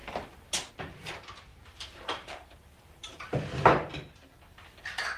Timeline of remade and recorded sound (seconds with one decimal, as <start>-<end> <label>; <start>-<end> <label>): 0.0-1.5 recorded; 1.5-3.3 remade; 3.3-5.2 recorded